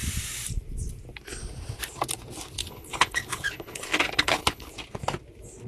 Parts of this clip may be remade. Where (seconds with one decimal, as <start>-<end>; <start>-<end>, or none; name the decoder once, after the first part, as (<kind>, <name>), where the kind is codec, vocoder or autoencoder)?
2.6-4.7 (codec, HILCodec)